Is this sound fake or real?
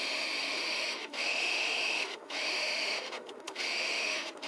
fake